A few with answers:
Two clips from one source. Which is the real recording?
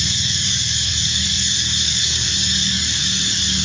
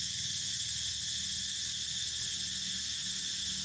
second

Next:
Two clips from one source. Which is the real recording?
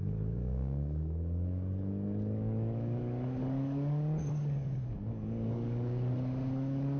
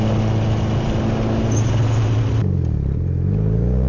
second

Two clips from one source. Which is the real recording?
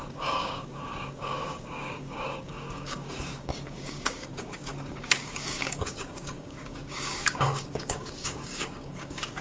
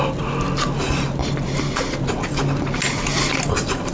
second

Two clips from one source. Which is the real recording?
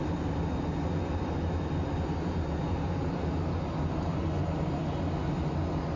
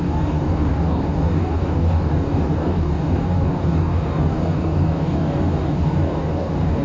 first